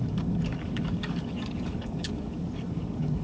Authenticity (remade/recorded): remade